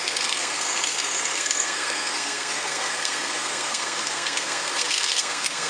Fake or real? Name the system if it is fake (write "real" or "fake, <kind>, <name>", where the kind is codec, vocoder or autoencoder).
fake, codec, SNAC